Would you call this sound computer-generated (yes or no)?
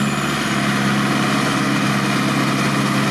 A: no